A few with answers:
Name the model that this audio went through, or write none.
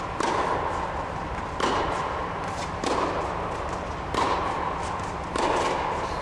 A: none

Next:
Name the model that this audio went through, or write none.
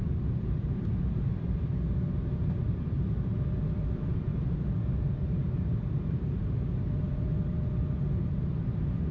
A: vocoder, BigVGAN v2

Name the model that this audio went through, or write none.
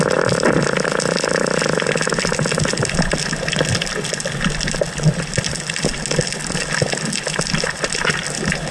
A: none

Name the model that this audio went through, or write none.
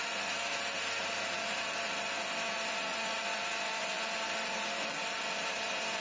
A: none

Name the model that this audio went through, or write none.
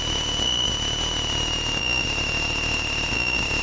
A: none